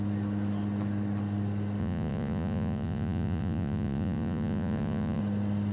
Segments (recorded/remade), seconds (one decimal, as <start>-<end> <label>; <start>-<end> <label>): 0.0-1.8 recorded; 1.8-5.2 remade; 5.2-5.7 recorded

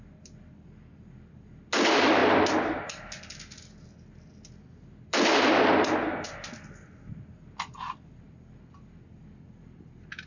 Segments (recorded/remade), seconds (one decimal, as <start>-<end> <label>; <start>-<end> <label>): 0.0-10.3 recorded

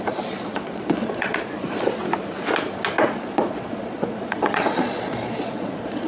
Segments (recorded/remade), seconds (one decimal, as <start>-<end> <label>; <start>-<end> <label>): 0.0-2.0 remade; 2.0-3.0 recorded; 3.0-6.1 remade

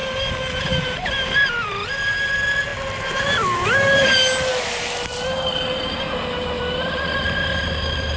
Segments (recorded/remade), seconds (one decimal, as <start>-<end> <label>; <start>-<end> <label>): 0.0-8.2 recorded

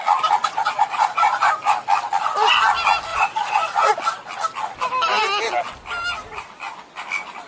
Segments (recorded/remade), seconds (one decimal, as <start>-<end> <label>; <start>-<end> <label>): 0.0-0.4 recorded; 0.4-1.5 remade; 1.5-3.1 recorded; 3.1-3.9 remade; 3.9-7.5 recorded

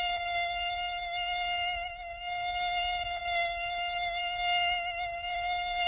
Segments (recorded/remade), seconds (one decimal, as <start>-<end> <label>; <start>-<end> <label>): 0.0-5.9 recorded

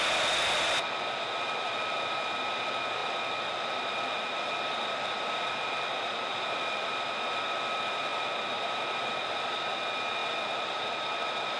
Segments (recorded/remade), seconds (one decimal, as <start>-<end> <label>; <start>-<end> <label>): 0.0-11.6 recorded